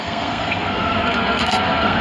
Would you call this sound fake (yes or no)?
yes